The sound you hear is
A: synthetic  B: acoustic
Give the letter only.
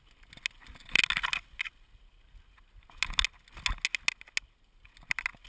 B